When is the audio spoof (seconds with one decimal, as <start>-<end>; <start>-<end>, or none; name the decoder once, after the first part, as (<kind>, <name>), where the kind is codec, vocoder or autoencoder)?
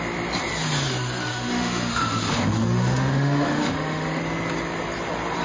1.3-4.2 (autoencoder, DAC-VAE)